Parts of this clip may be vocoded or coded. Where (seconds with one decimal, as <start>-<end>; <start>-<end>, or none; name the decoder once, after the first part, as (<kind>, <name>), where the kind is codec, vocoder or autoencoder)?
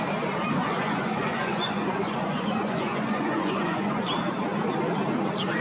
0.6-4.0 (vocoder, Vocos)